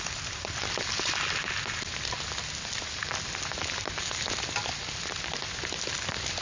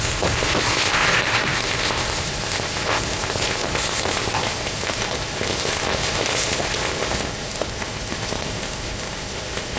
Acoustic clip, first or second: first